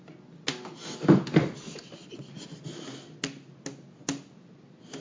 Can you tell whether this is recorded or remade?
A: recorded